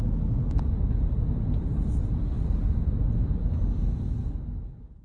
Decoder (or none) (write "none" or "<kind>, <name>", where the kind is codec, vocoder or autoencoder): none